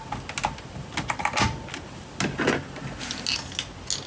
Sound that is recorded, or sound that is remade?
recorded